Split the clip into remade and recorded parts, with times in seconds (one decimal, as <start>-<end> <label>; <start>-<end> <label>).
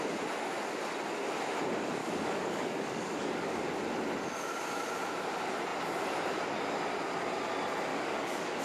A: 0.0-2.0 recorded; 2.0-3.7 remade; 3.7-7.9 recorded; 7.9-8.6 remade